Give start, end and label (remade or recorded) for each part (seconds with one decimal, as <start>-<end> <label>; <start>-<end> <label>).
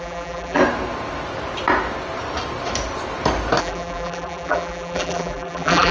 0.0-0.6 remade; 0.6-3.6 recorded; 3.6-5.9 remade